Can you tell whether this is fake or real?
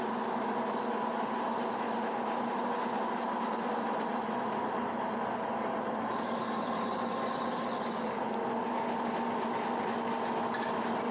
real